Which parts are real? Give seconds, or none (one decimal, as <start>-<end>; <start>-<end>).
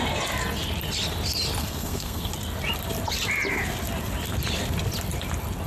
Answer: 0.0-1.6; 2.3-5.7